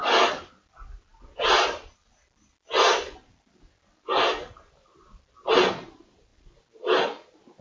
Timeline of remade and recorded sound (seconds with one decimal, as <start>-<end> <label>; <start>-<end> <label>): 0.0-7.6 recorded